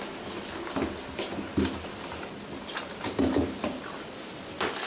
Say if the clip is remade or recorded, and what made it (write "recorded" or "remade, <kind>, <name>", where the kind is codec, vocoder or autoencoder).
recorded